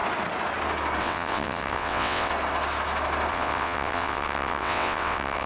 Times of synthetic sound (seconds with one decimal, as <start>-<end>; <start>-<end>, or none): 1.0-2.3; 3.3-5.5